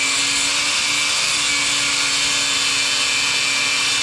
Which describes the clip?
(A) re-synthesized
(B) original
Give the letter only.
B